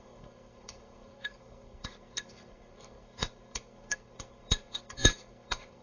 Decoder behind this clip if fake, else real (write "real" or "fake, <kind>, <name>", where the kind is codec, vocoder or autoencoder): fake, codec, SNAC